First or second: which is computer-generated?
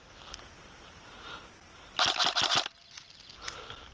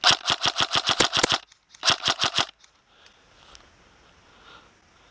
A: first